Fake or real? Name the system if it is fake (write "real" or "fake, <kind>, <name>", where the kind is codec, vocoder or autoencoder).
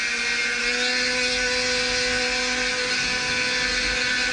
real